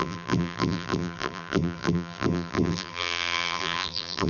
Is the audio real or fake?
fake